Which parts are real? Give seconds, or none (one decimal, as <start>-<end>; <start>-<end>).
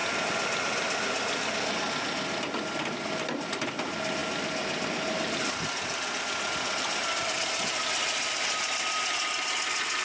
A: 0.0-10.0